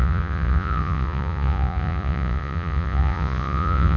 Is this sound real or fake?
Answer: fake